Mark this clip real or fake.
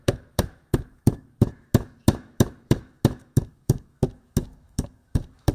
fake